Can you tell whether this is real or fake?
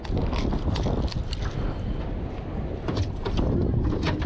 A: real